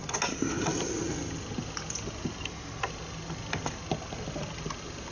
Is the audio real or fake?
real